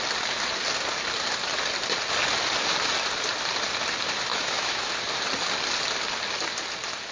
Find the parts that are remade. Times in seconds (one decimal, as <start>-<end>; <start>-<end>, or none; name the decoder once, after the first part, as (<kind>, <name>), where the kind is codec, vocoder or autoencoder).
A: 4.3-4.9 (autoencoder, DAC-VAE)